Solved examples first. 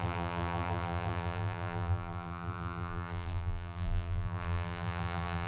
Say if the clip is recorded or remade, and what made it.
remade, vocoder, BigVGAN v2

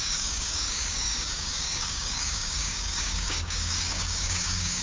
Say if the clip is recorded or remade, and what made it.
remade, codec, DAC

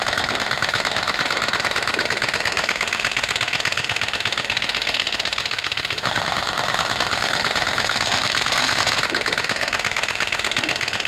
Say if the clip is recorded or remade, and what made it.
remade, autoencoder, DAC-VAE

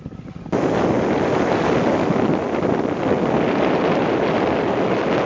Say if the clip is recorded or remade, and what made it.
recorded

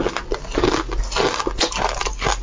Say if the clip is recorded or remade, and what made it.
recorded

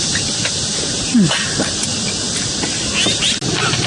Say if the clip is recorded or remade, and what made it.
recorded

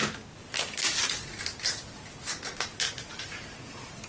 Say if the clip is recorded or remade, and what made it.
recorded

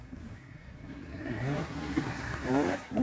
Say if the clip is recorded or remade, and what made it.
remade, codec, SNAC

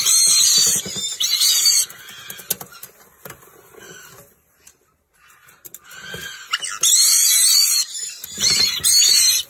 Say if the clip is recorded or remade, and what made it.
recorded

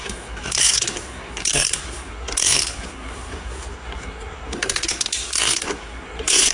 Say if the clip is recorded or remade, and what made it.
remade, codec, SNAC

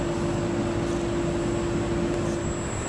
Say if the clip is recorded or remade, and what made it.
recorded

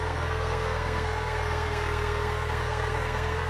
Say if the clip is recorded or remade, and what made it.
remade, codec, SNAC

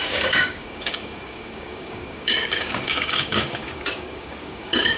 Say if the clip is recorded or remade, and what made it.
remade, codec, DAC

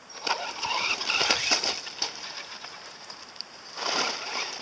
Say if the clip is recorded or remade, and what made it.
remade, vocoder, BigVGAN v2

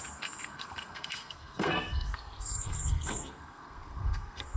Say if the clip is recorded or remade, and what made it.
remade, codec, SNAC